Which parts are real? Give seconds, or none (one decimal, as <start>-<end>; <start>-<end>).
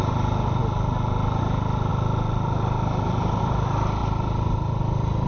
0.0-5.3